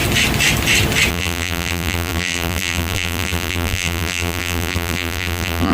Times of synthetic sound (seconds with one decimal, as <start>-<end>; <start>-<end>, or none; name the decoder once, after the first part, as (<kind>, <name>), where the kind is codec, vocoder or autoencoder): 1.1-5.7 (vocoder, BigVGAN v2)